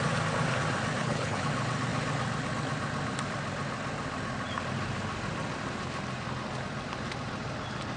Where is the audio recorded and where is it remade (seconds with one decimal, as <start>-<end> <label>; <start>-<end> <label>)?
0.0-1.0 recorded; 1.0-1.5 remade; 1.5-8.0 recorded

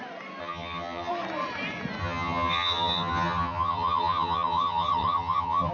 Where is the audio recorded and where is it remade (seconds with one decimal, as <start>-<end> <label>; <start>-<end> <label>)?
0.0-0.4 recorded; 0.4-1.1 remade; 1.1-2.0 recorded; 2.0-5.7 remade